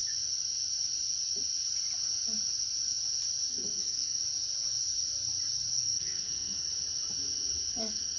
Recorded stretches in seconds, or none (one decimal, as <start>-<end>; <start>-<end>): 0.0-3.5; 4.2-5.7; 6.7-7.7